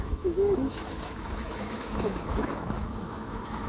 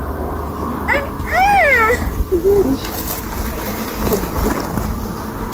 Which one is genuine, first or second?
second